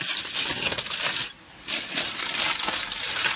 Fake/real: real